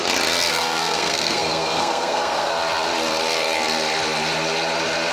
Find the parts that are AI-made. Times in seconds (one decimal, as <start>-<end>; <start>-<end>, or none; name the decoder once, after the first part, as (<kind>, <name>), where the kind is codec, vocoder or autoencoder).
0.5-2.5 (codec, SNAC)